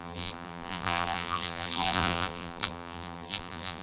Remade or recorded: remade